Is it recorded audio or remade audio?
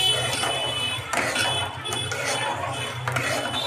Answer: recorded